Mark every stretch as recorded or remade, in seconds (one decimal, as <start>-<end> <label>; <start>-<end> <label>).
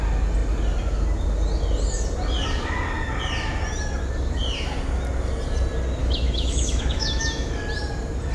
0.0-6.0 recorded; 6.0-7.5 remade; 7.5-8.3 recorded